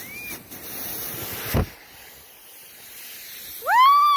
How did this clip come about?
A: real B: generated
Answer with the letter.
A